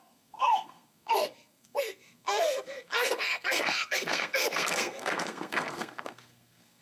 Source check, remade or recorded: remade